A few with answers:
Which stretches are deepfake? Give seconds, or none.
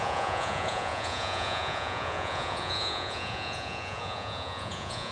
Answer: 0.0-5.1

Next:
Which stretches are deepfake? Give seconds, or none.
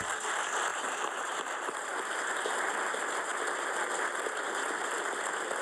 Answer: 0.7-2.3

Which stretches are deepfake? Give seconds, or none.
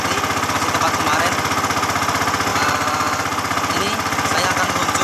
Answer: 2.5-3.8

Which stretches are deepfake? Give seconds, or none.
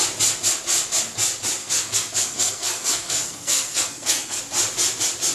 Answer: 1.6-4.4